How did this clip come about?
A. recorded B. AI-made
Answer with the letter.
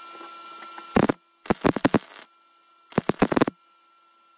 A